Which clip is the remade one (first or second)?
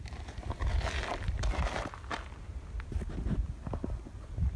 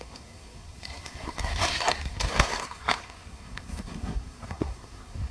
second